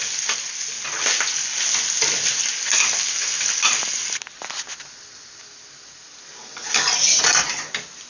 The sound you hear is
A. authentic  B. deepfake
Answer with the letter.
A